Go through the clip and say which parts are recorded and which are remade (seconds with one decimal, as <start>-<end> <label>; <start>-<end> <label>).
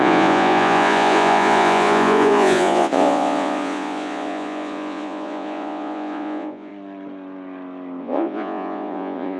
0.0-6.7 remade; 6.7-8.0 recorded; 8.0-9.4 remade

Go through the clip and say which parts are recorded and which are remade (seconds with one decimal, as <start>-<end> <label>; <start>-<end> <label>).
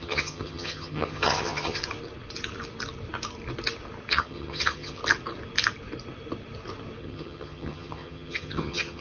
0.0-1.8 remade; 1.8-4.1 recorded; 4.1-5.0 remade; 5.0-7.0 recorded; 7.0-9.0 remade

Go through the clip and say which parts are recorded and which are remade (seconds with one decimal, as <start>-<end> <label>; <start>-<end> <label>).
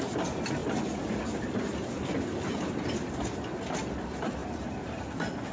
0.0-5.5 recorded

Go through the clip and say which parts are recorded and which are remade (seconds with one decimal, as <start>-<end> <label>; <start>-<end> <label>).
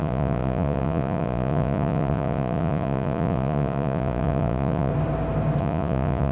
0.0-4.9 remade; 4.9-5.6 recorded; 5.6-6.3 remade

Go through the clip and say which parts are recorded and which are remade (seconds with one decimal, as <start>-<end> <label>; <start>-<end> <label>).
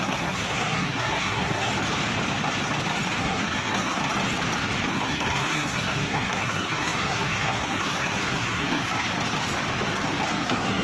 0.0-1.7 remade; 1.7-3.2 recorded; 3.2-4.0 remade; 4.0-4.9 recorded; 4.9-8.8 remade; 8.8-10.3 recorded; 10.3-10.8 remade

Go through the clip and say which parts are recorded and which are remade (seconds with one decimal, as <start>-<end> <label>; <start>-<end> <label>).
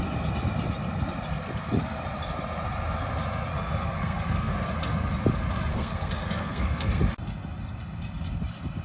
0.0-3.5 recorded; 3.5-4.7 remade; 4.7-5.7 recorded; 5.7-7.0 remade; 7.0-8.8 recorded